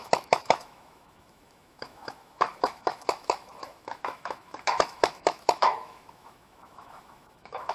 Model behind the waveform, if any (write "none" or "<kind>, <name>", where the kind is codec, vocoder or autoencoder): autoencoder, DAC-VAE